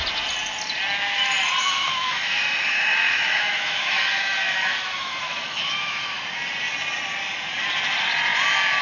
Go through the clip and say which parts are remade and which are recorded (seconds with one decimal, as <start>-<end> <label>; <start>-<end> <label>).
0.0-1.6 recorded; 1.6-6.2 remade; 6.2-8.8 recorded